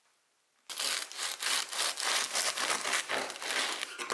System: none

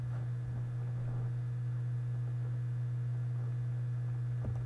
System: none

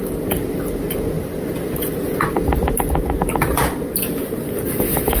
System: none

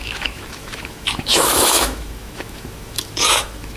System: autoencoder, DAC-VAE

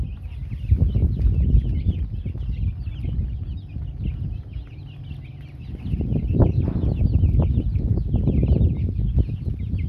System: none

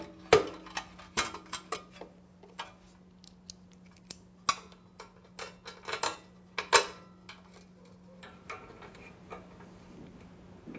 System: none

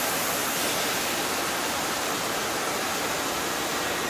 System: vocoder, BigVGAN v2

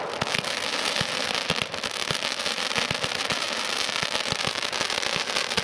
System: none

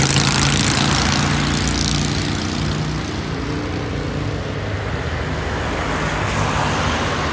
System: none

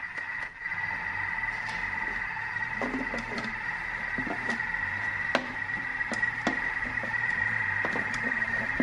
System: none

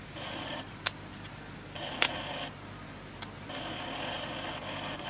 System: none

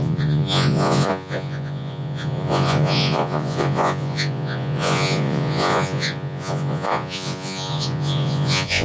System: vocoder, Vocos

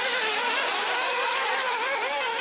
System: none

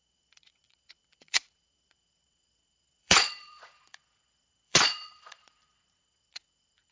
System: vocoder, Vocos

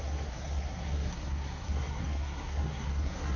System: codec, SNAC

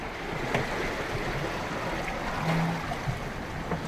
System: none